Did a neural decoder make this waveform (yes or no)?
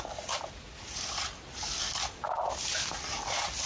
no